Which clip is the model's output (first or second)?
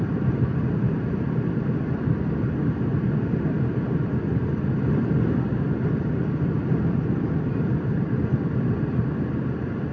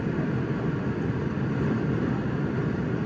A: first